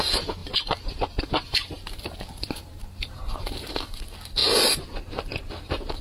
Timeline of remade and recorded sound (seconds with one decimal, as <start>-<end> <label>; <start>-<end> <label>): 0.0-0.4 recorded; 0.4-4.0 remade; 4.0-6.0 recorded